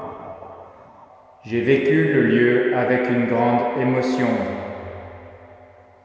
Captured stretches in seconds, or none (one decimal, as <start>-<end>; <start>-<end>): 1.1-6.0